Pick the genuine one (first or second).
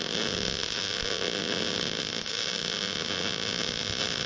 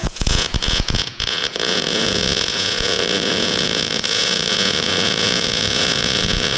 first